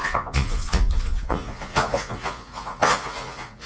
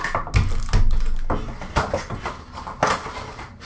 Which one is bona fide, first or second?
second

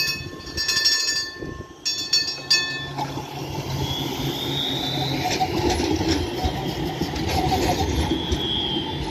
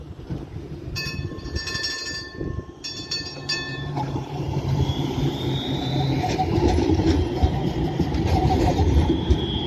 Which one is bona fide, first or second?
first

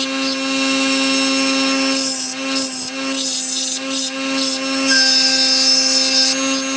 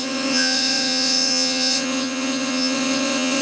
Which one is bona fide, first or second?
first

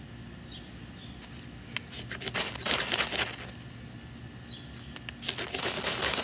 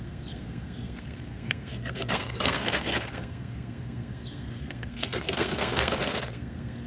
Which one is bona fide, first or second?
first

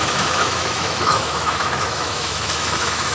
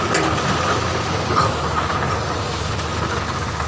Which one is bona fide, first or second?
second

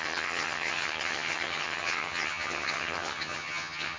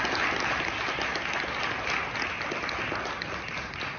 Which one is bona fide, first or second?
second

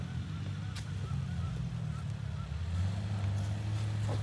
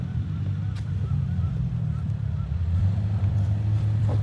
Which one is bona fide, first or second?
first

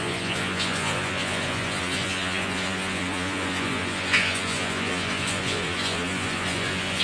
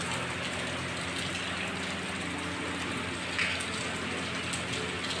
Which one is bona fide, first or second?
second